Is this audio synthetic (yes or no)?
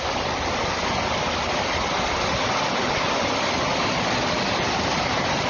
no